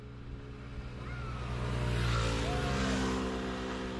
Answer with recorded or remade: recorded